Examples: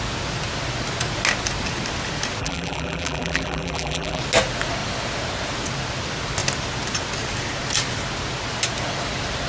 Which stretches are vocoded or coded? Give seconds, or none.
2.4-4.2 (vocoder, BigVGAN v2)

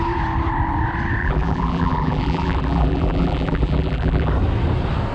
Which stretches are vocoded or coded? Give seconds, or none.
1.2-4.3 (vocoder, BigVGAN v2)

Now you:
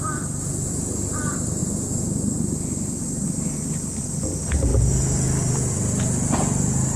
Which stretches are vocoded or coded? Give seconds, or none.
0.0-1.6 (vocoder, BigVGAN v2); 4.0-4.7; 5.5-7.0